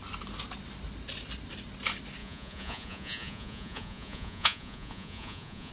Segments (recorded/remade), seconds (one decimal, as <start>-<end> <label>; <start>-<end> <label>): 0.0-2.2 recorded; 2.2-5.7 remade